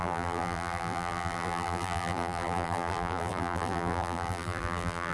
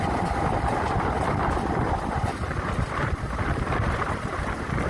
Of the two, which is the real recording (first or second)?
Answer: second